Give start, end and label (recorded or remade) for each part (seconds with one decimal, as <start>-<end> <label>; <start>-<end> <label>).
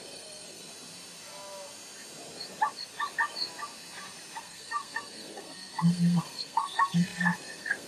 0.0-0.7 remade; 0.7-4.4 recorded; 4.4-7.9 remade